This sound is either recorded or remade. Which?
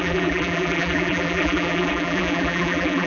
remade